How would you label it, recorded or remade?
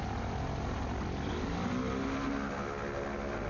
recorded